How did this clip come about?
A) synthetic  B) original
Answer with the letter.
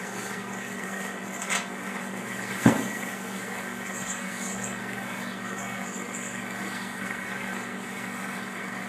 A